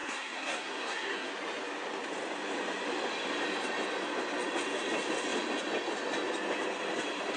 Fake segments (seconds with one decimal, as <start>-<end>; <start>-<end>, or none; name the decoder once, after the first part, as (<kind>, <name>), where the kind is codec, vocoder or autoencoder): 0.0-1.3 (codec, SNAC)